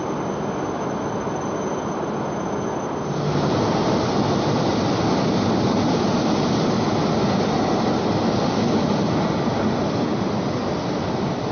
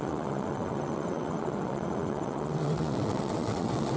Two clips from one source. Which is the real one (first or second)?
first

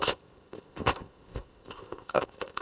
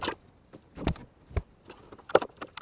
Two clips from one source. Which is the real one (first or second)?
second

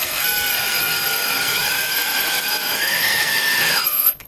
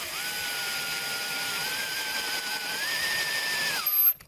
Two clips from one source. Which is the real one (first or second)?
second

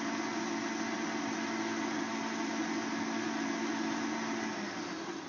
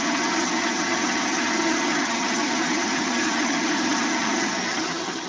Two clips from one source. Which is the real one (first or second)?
first